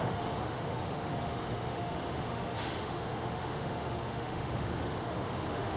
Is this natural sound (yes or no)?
no